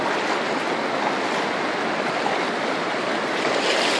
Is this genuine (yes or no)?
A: yes